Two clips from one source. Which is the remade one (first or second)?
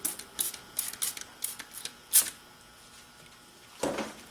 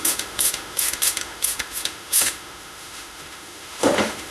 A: second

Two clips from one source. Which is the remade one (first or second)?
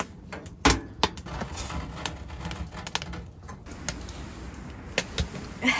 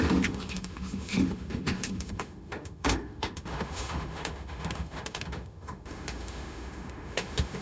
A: second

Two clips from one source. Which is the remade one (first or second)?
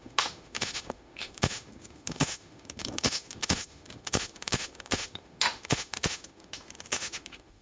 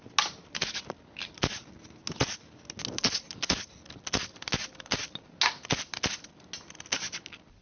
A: first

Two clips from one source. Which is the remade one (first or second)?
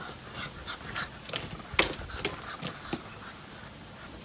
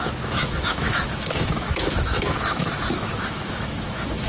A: second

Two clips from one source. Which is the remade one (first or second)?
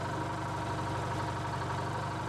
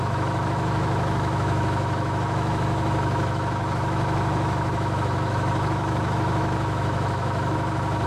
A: second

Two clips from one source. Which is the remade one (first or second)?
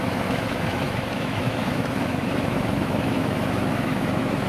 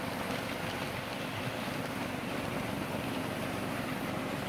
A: first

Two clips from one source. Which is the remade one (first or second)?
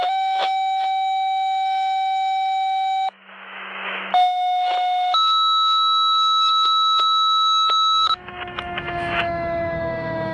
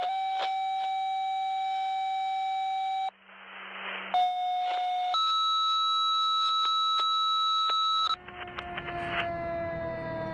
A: first